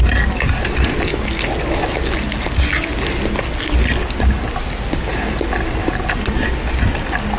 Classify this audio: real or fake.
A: real